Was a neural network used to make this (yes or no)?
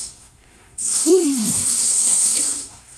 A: yes